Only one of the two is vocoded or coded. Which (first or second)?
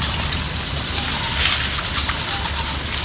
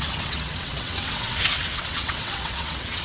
second